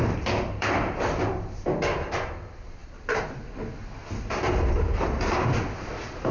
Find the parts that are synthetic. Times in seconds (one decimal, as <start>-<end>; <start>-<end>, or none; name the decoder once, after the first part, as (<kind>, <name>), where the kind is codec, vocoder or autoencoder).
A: 0.0-2.8 (vocoder, BigVGAN v2); 4.2-6.3